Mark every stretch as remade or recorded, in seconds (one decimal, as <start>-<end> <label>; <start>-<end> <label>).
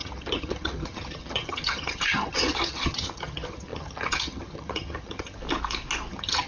0.0-5.4 remade; 5.4-6.1 recorded; 6.1-6.5 remade